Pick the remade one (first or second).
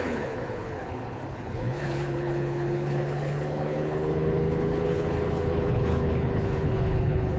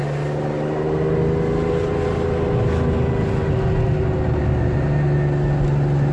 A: first